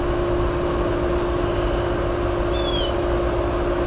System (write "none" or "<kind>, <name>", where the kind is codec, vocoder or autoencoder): none